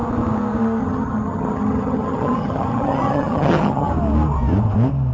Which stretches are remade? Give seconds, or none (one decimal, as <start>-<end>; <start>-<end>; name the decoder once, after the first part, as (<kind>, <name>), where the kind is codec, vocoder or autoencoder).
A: 0.8-3.9 (vocoder, HiFi-GAN)